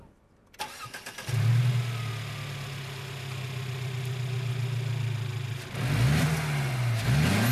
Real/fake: real